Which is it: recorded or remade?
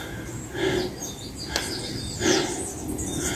recorded